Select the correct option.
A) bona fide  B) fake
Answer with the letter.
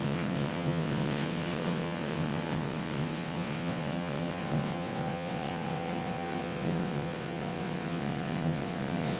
B